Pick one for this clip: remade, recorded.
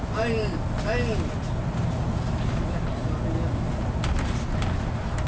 recorded